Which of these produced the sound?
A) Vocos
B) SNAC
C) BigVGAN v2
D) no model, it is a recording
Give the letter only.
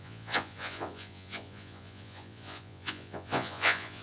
A